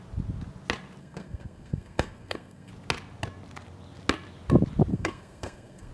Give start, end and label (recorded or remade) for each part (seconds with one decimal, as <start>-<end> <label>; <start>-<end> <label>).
0.0-1.0 recorded; 1.0-2.7 remade; 2.7-4.9 recorded; 4.9-5.9 remade